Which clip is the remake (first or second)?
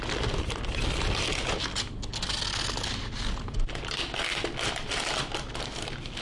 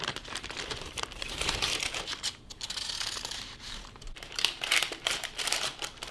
second